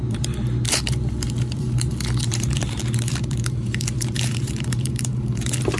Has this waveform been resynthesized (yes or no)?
yes